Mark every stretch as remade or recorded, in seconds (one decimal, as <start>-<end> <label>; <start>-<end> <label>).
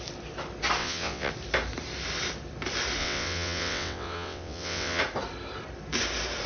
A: 0.0-0.8 recorded; 0.8-1.3 remade; 1.3-3.0 recorded; 3.0-5.0 remade; 5.0-6.5 recorded